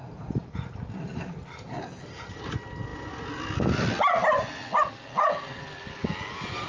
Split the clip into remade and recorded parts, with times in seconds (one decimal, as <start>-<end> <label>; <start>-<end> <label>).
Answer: 0.0-6.7 recorded

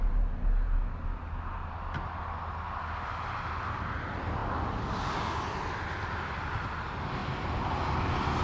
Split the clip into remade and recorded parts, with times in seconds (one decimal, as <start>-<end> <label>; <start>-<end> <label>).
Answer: 0.0-8.4 recorded